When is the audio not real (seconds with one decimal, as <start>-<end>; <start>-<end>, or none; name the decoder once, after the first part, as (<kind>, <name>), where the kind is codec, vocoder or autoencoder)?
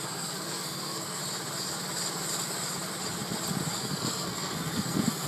0.0-1.2 (codec, SNAC); 3.8-5.3